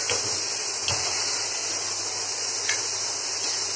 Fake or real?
real